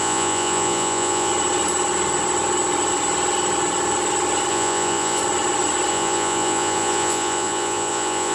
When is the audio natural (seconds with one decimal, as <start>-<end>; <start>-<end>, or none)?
1.3-4.5; 5.2-5.9